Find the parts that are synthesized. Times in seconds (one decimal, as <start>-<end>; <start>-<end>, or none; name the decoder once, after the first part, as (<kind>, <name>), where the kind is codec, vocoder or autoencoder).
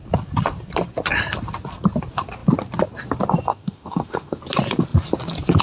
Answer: 3.5-4.4 (autoencoder, DAC-VAE)